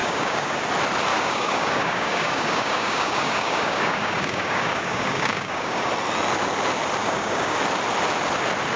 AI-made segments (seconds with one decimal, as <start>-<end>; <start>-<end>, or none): 0.0-0.6; 1.1-5.9; 7.0-7.6